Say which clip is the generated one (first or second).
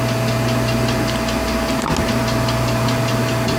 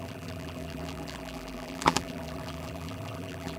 second